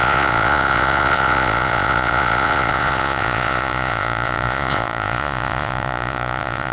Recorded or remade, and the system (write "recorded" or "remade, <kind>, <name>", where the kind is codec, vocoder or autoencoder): remade, vocoder, Vocos